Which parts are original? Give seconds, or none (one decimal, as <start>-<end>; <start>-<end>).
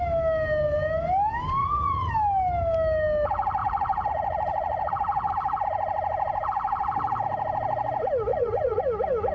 0.0-1.6; 2.1-3.6; 5.3-8.3; 8.8-9.3